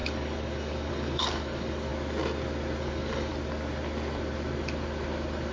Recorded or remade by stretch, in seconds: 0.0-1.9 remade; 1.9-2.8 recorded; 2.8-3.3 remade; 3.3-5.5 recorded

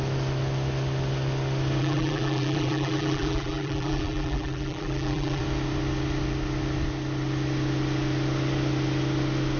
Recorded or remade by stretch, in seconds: 0.0-1.8 recorded; 1.8-5.4 remade; 5.4-9.6 recorded